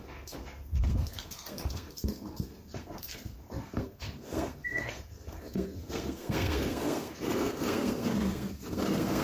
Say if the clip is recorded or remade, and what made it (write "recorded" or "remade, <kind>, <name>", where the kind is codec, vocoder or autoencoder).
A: remade, codec, SNAC